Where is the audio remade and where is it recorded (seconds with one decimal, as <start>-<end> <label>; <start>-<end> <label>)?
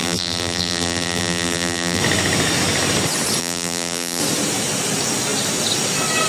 0.0-2.0 remade; 2.0-3.4 recorded; 3.4-4.2 remade; 4.2-6.3 recorded